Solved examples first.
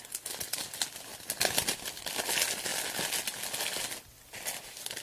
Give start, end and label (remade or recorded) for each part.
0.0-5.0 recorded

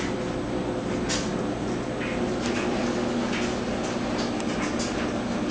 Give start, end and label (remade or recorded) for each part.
0.0-5.5 recorded

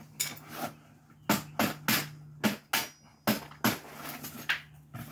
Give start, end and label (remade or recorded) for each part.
0.0-5.1 recorded

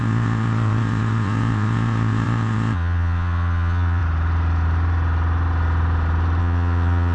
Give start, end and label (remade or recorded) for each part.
0.0-4.0 remade; 4.0-6.4 recorded; 6.4-7.1 remade

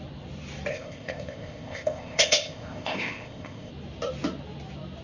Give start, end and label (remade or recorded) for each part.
0.0-0.7 recorded; 0.7-3.7 remade; 3.7-5.0 recorded